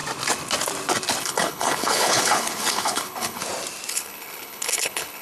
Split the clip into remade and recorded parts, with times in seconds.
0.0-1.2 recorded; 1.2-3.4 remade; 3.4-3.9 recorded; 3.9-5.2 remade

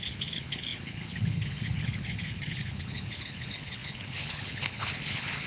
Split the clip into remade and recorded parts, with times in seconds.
0.0-5.5 remade

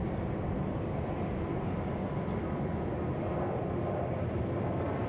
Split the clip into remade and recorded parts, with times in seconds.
0.0-5.1 recorded

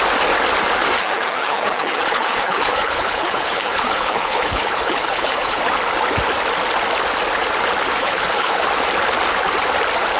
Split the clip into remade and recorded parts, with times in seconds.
0.0-1.0 recorded; 1.0-5.6 remade; 5.6-8.0 recorded; 8.0-8.6 remade; 8.6-10.2 recorded